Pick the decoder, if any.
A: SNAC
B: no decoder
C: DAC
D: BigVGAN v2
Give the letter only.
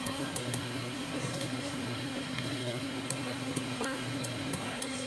A